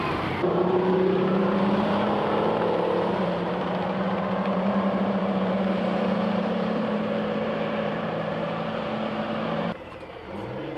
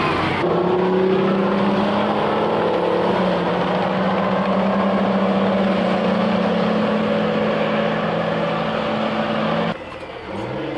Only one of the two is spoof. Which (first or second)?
first